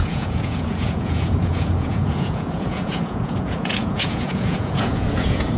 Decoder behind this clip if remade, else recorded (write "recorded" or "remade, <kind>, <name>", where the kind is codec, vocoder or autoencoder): remade, vocoder, Vocos